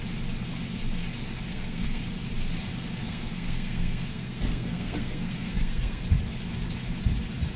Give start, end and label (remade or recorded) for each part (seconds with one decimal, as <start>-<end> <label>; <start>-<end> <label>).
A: 0.0-1.5 recorded; 1.5-2.0 remade; 2.0-3.0 recorded; 3.0-6.0 remade; 6.0-7.6 recorded